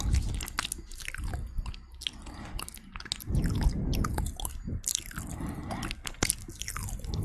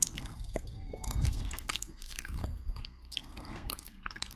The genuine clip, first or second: first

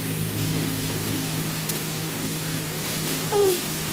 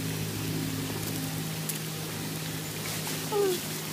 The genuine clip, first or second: second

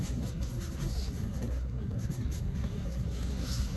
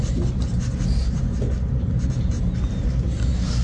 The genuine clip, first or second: second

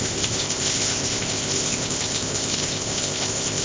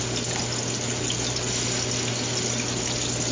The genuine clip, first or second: second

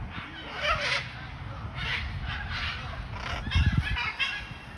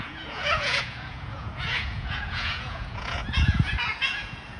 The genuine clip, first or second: first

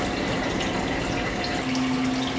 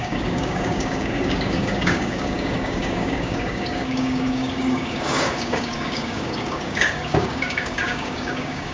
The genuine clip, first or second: first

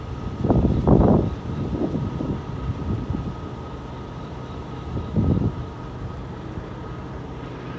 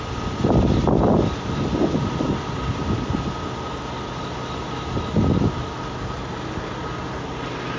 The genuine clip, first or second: second